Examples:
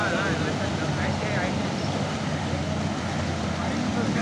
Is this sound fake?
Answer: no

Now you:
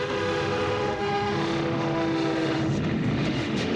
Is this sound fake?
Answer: yes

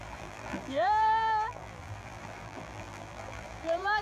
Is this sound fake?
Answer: yes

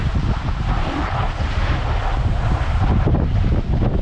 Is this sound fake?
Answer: no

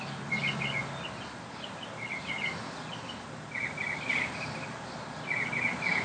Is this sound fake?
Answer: no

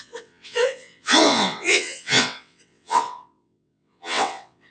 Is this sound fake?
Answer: yes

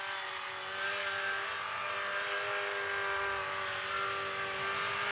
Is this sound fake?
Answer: no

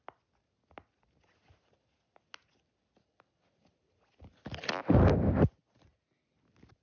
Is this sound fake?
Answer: no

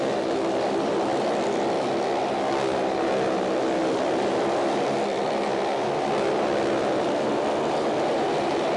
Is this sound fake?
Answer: no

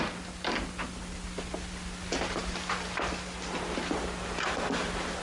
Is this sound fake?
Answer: no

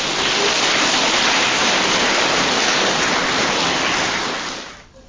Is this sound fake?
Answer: yes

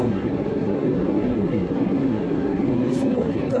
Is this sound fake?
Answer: yes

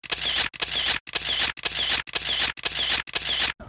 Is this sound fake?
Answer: no